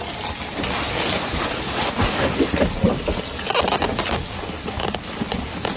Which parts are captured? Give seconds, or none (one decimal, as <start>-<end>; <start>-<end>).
0.0-5.8